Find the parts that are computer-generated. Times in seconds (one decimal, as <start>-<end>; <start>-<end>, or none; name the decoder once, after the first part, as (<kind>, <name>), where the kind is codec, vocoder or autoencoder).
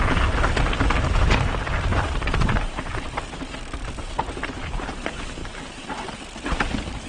1.9-4.0 (vocoder, BigVGAN v2); 5.4-6.1